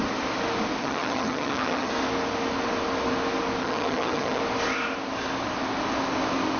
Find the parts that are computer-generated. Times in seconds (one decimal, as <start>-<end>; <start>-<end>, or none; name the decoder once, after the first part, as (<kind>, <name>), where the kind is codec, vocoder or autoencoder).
0.8-1.9 (vocoder, HiFi-GAN); 3.6-4.4